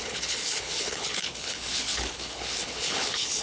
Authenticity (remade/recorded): remade